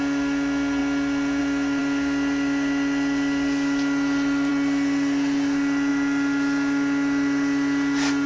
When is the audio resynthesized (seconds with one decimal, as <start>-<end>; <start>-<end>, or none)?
none